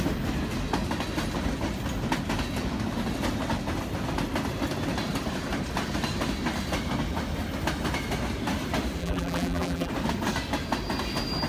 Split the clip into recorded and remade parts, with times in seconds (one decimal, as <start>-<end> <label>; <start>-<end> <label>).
0.0-9.0 recorded; 9.0-9.9 remade; 9.9-11.5 recorded